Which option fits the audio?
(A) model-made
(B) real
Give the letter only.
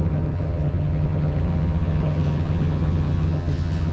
A